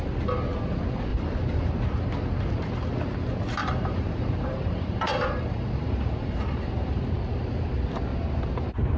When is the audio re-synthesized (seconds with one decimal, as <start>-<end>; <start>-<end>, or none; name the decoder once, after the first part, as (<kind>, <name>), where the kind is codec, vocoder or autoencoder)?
1.1-1.7 (vocoder, BigVGAN v2); 3.6-7.0